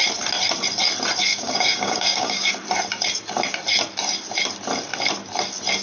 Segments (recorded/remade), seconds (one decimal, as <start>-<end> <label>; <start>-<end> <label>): 0.0-1.3 recorded; 1.3-2.5 remade; 2.5-5.8 recorded